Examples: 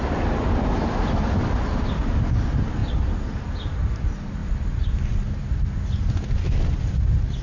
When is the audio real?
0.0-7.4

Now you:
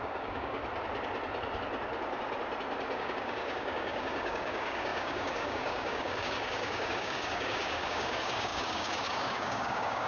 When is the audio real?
0.6-3.0

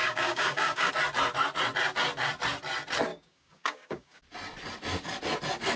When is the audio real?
0.9-3.1; 4.2-5.8

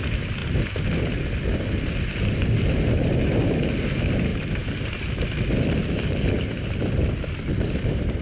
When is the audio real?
0.0-8.2